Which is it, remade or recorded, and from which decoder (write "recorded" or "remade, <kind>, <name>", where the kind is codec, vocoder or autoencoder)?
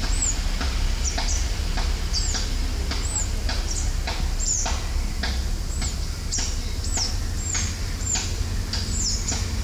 recorded